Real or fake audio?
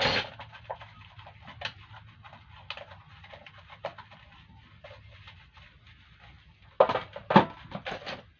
real